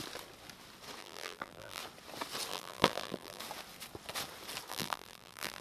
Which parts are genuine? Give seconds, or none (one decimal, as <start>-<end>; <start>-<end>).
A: 0.0-1.0; 1.8-2.5; 3.4-4.7